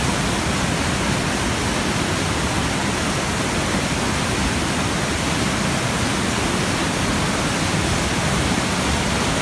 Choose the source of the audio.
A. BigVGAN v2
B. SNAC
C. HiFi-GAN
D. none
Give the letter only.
D